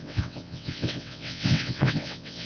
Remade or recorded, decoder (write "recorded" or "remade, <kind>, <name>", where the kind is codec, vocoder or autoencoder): remade, vocoder, WaveNeXt